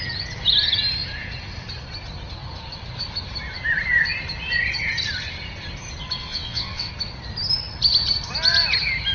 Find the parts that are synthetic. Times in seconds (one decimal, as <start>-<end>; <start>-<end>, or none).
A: 6.2-6.9